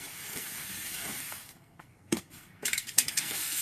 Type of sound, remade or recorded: remade